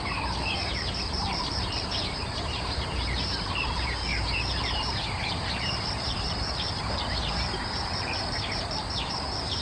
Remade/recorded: remade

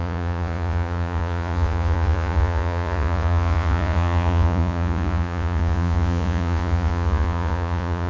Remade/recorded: remade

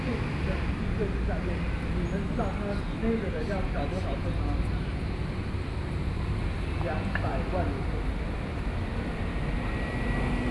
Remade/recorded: recorded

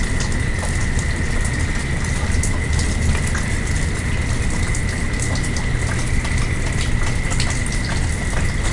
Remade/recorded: recorded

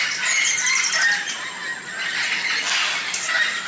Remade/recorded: recorded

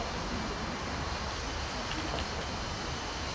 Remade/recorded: remade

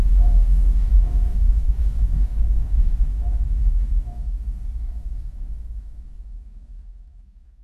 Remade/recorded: remade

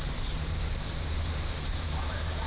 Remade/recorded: remade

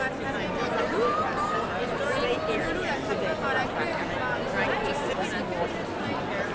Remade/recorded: recorded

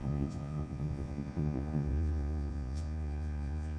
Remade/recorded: remade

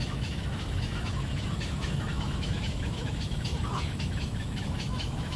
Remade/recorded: remade